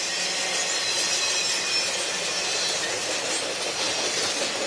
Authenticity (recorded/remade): recorded